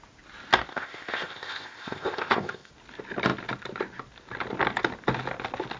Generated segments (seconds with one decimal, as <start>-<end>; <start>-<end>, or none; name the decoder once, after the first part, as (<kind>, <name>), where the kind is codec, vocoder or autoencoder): 0.7-2.7 (codec, ZipCodec)